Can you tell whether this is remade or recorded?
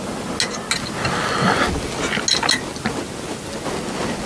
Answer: recorded